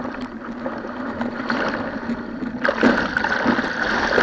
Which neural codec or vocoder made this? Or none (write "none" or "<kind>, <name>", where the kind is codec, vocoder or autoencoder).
none